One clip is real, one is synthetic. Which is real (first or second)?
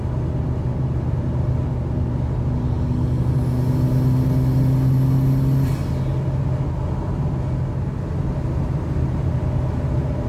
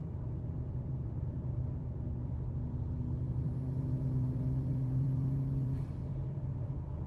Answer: first